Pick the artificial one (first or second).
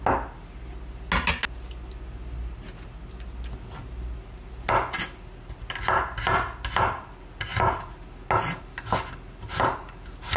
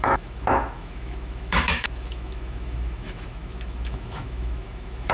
second